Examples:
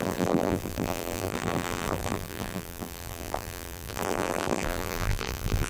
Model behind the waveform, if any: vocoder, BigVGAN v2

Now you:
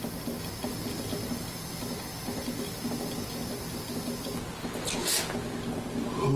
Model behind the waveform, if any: none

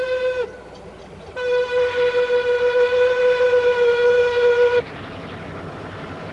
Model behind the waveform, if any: none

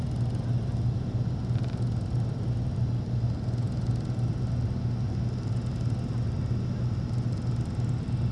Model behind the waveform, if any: none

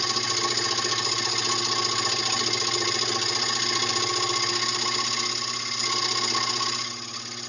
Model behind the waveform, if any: none